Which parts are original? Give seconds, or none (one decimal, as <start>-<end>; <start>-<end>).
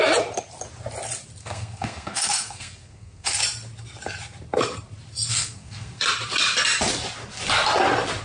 0.0-1.4; 3.4-5.3; 6.0-8.2